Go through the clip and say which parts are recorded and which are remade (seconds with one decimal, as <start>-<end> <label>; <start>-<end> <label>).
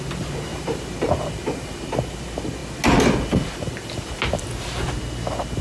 0.0-0.5 recorded; 0.5-2.0 remade; 2.0-5.6 recorded